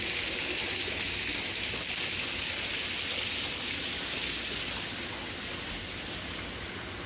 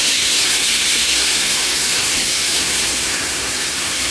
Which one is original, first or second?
first